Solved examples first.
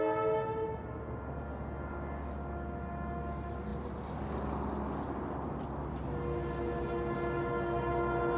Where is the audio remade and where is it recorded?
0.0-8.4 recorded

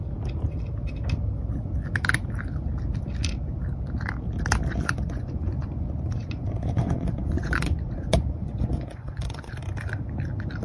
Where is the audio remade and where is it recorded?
0.0-4.7 recorded; 4.7-9.5 remade; 9.5-10.6 recorded

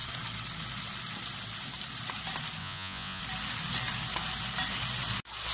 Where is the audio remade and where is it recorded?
0.0-2.6 recorded; 2.6-3.2 remade; 3.2-5.5 recorded

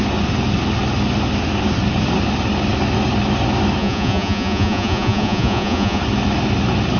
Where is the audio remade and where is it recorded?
0.0-3.8 recorded; 3.8-6.0 remade; 6.0-7.0 recorded